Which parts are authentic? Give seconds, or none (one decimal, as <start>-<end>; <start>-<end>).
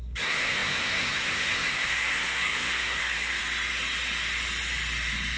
3.4-5.4